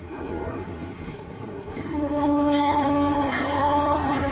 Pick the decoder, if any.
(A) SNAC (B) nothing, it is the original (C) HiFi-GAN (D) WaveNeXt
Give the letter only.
A